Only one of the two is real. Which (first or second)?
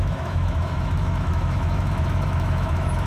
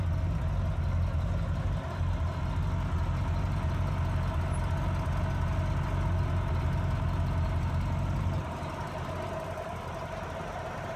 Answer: second